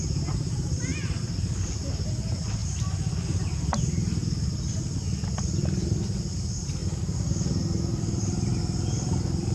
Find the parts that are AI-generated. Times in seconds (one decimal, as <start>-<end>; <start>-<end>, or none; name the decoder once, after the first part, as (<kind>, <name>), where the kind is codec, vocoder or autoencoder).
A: 6.8-8.6 (vocoder, BigVGAN v2)